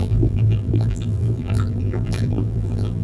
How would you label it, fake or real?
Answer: fake